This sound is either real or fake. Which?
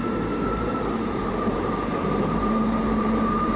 fake